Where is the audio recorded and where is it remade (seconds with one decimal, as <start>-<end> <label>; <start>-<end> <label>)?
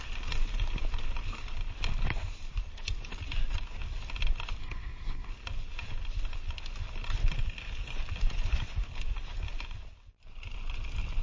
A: 0.0-4.6 recorded; 4.6-5.3 remade; 5.3-11.2 recorded